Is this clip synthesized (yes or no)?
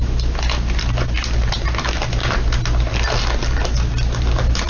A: no